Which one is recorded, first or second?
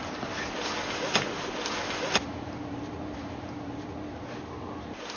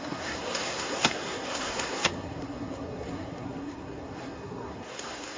first